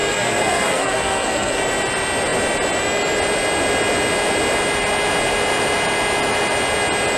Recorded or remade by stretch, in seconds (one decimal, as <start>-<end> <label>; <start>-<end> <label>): 0.0-1.6 remade; 1.6-7.2 recorded